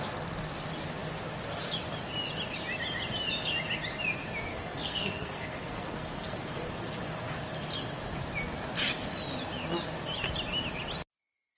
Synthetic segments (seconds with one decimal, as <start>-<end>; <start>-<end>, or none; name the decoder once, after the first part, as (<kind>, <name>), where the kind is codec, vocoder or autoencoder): 4.5-6.7 (codec, SNAC)